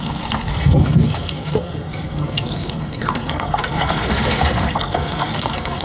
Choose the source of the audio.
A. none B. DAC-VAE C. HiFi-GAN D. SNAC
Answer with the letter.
D